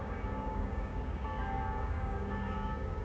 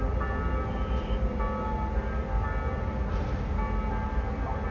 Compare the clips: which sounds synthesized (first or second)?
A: first